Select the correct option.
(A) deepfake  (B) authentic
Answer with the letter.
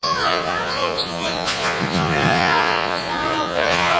A